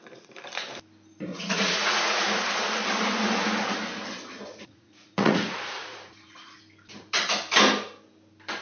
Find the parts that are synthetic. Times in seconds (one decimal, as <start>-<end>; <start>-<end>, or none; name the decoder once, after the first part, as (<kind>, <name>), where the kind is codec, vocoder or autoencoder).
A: 1.3-2.4 (vocoder, Vocos); 4.5-6.6